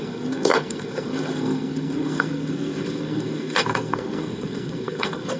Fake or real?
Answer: fake